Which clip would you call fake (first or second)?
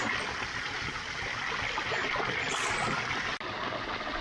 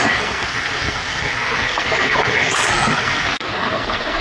second